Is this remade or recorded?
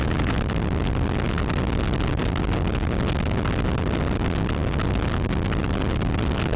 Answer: recorded